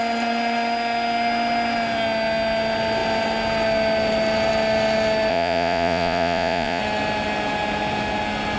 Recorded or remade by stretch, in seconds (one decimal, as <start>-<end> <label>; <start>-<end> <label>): 0.0-5.3 recorded; 5.3-6.8 remade; 6.8-8.6 recorded